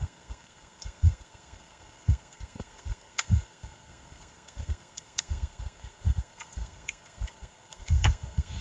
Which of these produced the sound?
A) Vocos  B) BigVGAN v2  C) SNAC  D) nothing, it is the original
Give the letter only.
C